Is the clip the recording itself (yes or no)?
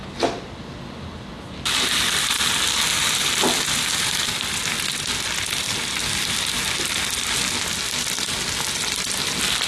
yes